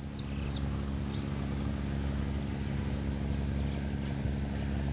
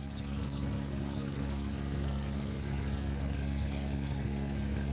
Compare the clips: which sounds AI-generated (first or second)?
second